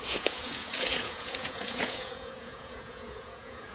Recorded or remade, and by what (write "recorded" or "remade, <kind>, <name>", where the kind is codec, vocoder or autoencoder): remade, vocoder, Vocos